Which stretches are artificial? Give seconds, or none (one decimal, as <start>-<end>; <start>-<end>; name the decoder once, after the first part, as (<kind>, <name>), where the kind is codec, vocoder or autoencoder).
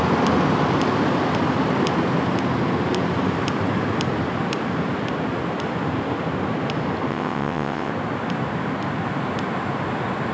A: 7.1-7.9 (vocoder, WaveNeXt)